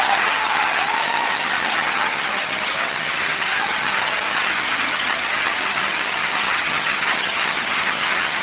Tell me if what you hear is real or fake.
fake